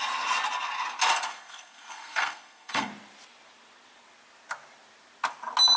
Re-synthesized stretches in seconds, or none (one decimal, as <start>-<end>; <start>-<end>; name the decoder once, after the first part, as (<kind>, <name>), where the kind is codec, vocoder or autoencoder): 1.1-2.9 (codec, SNAC)